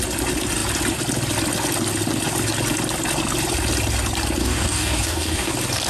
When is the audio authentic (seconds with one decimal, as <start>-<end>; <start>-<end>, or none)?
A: 0.0-4.4; 5.5-5.9